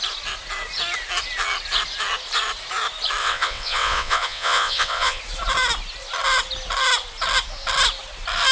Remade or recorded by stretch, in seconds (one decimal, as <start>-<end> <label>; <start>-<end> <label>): 0.0-3.2 recorded; 3.2-5.2 remade; 5.2-8.5 recorded